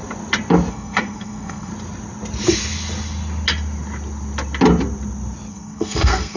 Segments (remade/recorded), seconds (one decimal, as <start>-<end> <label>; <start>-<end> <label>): 0.0-0.7 recorded; 0.7-1.7 remade; 1.7-5.5 recorded; 5.5-6.4 remade